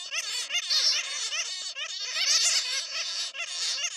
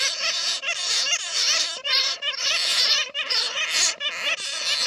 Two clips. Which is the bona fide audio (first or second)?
first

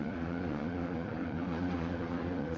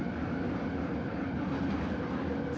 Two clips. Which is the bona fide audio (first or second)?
second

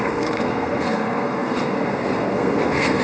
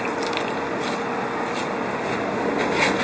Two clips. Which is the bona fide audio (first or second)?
second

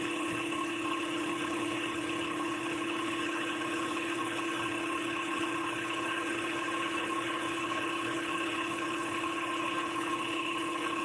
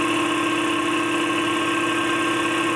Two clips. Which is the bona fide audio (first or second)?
second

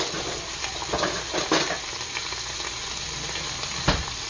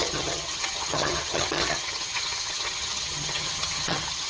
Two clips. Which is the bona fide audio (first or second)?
first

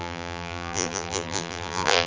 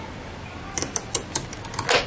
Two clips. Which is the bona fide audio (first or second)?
second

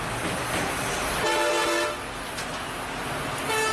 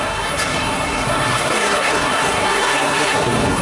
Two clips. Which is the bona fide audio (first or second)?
first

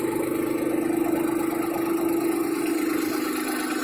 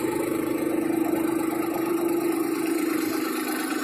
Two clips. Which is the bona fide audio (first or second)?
first